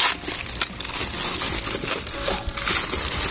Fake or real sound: real